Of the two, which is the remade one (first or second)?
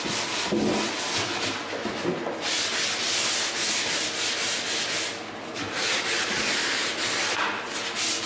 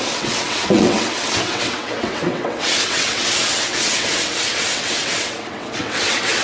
second